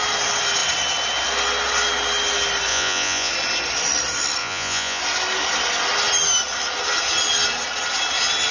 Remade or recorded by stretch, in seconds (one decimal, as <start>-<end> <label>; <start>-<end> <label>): 0.0-2.7 recorded; 2.7-3.3 remade; 3.3-4.4 recorded; 4.4-5.0 remade; 5.0-8.5 recorded

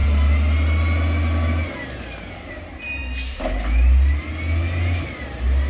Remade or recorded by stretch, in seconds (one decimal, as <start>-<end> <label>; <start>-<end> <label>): 0.0-5.7 recorded

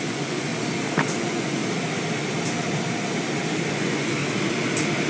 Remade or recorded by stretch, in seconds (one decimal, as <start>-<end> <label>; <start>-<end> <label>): 0.0-0.5 remade; 0.5-1.2 recorded; 1.2-1.6 remade; 1.6-3.7 recorded; 3.7-4.2 remade; 4.2-5.1 recorded